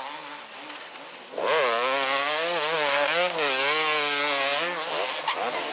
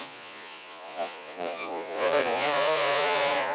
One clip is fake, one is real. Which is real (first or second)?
first